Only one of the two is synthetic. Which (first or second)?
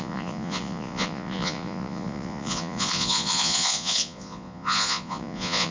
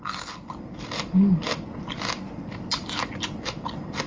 first